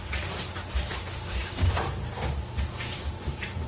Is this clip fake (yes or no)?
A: no